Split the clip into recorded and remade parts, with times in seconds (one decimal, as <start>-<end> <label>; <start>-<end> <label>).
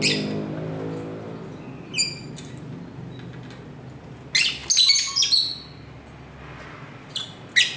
0.0-7.8 recorded